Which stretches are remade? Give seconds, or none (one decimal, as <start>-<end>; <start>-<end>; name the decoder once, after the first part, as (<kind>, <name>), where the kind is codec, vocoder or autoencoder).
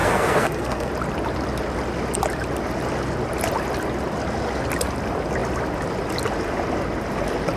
0.0-0.9 (codec, SNAC)